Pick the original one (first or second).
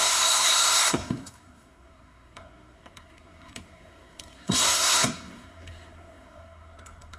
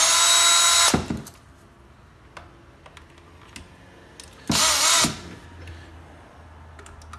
second